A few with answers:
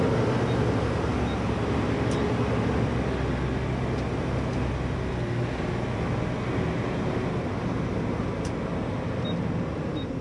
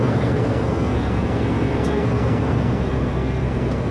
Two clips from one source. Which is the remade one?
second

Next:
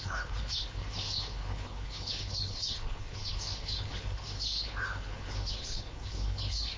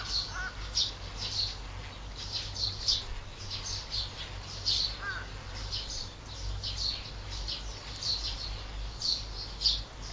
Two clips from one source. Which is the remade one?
first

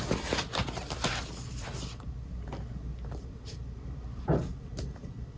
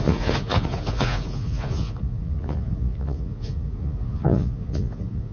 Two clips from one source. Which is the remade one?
second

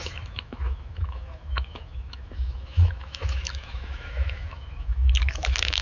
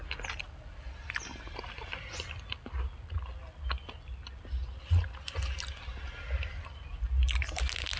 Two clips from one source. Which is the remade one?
first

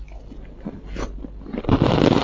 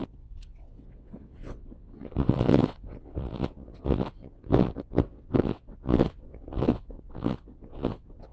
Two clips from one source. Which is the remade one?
second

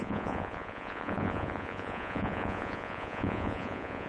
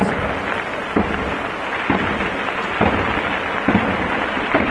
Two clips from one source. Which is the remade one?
first